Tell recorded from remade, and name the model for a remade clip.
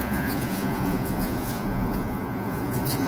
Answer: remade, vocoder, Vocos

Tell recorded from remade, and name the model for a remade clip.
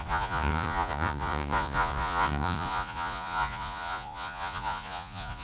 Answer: remade, vocoder, Vocos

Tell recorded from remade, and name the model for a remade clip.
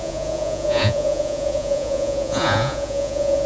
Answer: remade, vocoder, Vocos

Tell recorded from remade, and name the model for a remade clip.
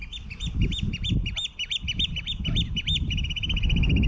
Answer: recorded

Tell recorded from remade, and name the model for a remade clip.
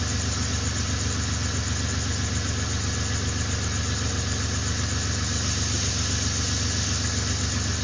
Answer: recorded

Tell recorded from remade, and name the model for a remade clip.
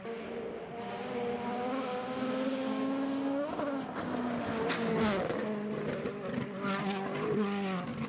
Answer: recorded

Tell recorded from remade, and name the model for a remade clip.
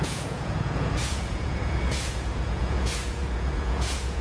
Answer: remade, vocoder, Vocos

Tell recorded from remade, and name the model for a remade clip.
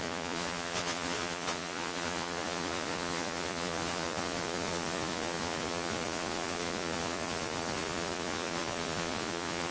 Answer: remade, vocoder, Vocos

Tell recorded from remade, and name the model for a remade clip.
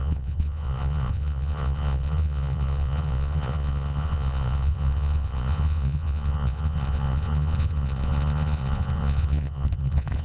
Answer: remade, vocoder, Vocos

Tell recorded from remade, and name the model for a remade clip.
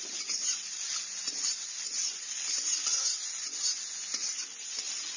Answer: recorded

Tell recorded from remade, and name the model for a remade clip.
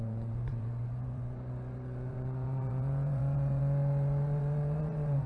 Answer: remade, vocoder, Vocos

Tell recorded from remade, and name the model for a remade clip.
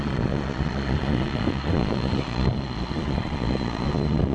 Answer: remade, vocoder, Vocos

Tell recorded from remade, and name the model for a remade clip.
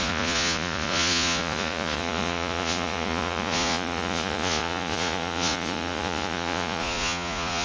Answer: remade, vocoder, Vocos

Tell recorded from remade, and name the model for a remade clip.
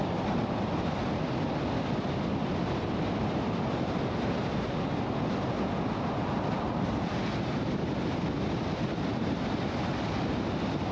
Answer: recorded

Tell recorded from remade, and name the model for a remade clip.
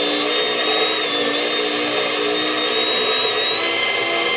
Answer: recorded